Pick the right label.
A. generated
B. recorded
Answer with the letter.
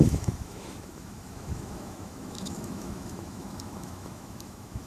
A